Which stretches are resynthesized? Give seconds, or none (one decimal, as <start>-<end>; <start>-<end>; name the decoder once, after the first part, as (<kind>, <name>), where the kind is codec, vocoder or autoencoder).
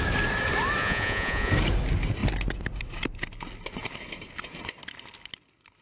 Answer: 0.8-1.5 (vocoder, Vocos)